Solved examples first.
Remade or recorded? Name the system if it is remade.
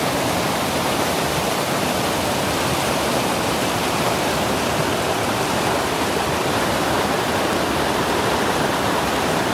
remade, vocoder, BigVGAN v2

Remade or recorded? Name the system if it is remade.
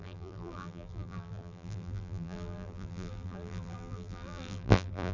remade, vocoder, BigVGAN v2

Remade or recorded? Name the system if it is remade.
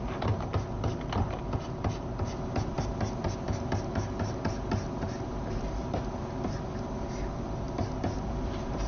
recorded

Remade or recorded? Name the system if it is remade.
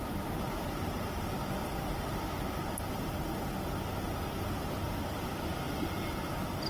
recorded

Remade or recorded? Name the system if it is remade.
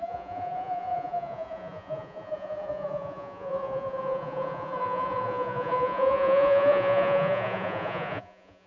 remade, vocoder, Vocos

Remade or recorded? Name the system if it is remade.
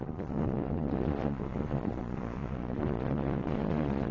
remade, vocoder, Vocos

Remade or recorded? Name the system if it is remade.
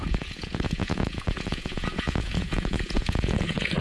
remade, vocoder, Vocos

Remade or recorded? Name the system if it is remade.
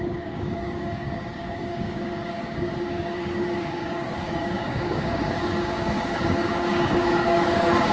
remade, codec, DAC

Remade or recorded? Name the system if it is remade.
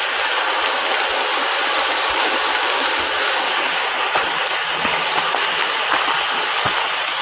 recorded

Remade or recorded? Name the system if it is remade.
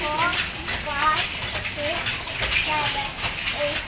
recorded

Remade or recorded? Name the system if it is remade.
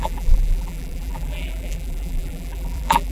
remade, vocoder, BigVGAN v2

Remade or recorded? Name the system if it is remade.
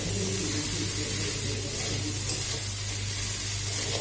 recorded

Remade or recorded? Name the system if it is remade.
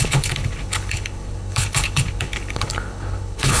remade, codec, HILCodec